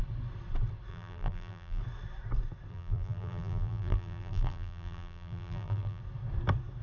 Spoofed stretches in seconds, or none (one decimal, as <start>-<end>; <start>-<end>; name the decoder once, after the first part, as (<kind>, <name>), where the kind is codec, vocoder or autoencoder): 0.9-1.8 (vocoder, BigVGAN v2); 2.7-6.0